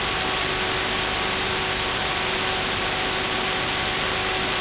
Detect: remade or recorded recorded